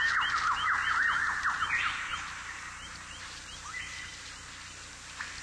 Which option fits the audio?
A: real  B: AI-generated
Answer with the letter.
A